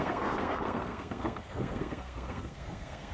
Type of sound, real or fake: fake